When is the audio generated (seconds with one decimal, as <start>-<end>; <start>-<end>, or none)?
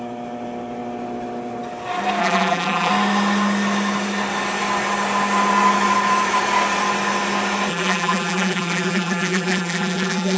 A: 2.2-2.9; 7.7-10.4